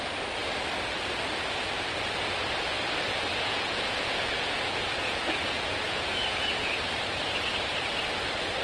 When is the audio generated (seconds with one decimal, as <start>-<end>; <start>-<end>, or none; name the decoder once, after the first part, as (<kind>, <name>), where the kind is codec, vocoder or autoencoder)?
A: 3.3-6.5 (vocoder, Vocos)